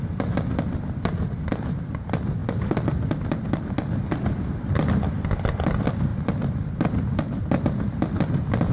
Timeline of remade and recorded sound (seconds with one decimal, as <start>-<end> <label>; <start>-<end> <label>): 0.0-8.7 recorded